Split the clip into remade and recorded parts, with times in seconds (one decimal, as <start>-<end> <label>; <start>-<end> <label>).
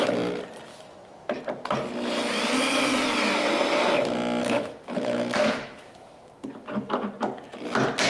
0.0-0.7 recorded; 0.7-1.4 remade; 1.4-4.4 recorded; 4.4-6.3 remade; 6.3-8.1 recorded